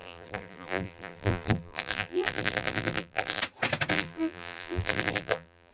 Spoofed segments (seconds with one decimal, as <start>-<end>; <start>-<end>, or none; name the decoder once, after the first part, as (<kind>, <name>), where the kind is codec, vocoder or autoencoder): 0.0-3.4 (vocoder, BigVGAN v2); 3.9-5.7